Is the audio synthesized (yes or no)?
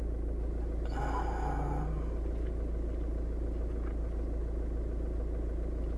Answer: no